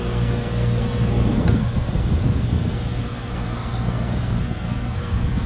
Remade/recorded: remade